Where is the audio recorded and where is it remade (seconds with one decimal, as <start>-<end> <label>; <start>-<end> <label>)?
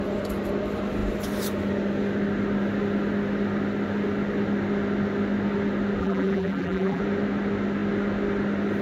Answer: 0.0-6.0 recorded; 6.0-7.0 remade; 7.0-8.8 recorded